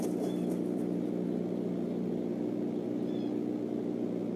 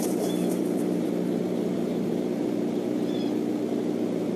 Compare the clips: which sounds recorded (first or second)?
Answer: first